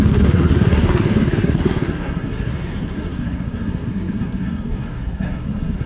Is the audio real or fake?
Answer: fake